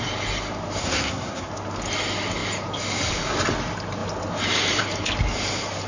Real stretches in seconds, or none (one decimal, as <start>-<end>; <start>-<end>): 0.0-0.8; 1.5-5.9